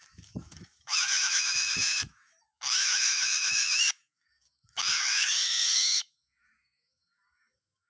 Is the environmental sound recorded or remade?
remade